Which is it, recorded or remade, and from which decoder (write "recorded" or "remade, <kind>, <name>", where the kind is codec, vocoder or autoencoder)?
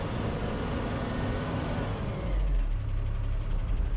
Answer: recorded